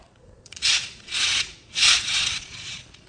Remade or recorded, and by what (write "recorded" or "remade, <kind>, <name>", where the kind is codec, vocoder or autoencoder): remade, vocoder, Vocos